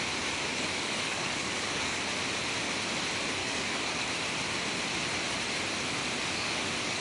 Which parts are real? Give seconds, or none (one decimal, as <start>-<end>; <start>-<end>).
0.0-0.5; 2.0-3.4; 4.1-6.2